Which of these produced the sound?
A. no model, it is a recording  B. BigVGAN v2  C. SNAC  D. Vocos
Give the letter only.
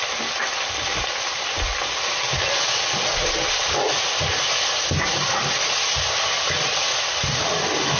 A